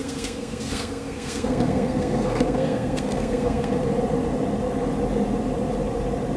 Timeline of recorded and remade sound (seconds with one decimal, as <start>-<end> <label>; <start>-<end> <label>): 0.0-3.8 remade; 3.8-6.4 recorded